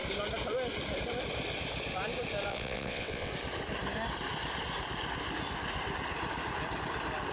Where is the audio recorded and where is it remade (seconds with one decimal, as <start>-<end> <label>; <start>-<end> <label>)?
0.0-2.5 recorded; 2.5-3.3 remade; 3.3-7.3 recorded